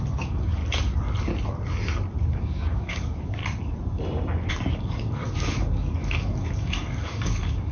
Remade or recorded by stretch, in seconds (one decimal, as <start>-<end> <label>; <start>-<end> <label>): 0.0-0.6 remade; 0.6-2.3 recorded; 2.3-3.4 remade; 3.4-4.5 recorded; 4.5-7.7 remade